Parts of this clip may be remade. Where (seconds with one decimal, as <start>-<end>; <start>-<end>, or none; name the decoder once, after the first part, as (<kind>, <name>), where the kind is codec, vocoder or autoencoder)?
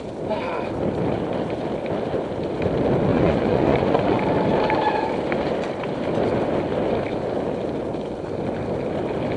3.1-4.2 (vocoder, Vocos)